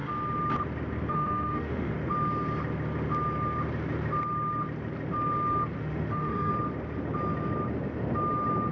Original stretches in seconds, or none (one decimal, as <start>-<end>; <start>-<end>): 0.0-1.1; 1.9-5.8; 6.5-8.7